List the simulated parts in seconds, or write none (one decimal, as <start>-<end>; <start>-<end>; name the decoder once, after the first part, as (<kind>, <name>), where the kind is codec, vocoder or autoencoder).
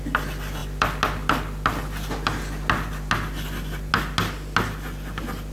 none